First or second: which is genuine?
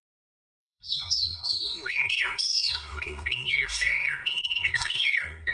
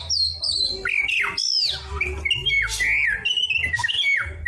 second